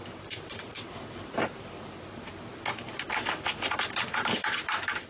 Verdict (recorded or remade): recorded